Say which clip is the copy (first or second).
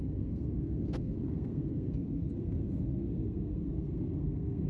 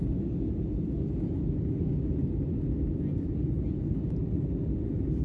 first